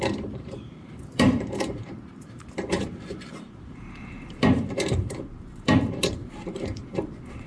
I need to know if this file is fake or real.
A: fake